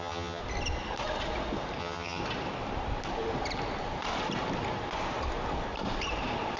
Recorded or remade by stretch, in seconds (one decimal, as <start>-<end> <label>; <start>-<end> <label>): 0.0-0.4 remade; 0.4-1.8 recorded; 1.8-2.2 remade; 2.2-6.6 recorded